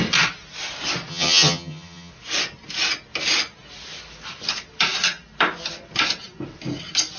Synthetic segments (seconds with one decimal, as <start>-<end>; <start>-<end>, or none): 1.1-2.1